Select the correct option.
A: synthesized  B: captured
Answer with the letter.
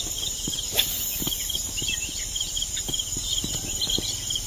B